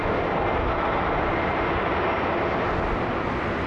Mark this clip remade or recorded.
recorded